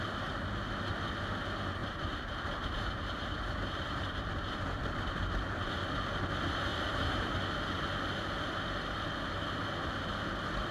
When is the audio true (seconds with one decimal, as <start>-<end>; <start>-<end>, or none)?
0.0-1.8; 5.7-6.7; 7.3-10.7